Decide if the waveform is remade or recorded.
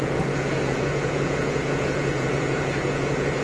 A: remade